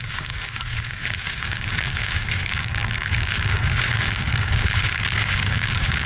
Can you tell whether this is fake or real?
fake